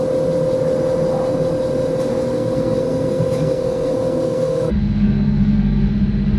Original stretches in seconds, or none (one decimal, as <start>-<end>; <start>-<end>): 0.0-2.1; 5.9-6.4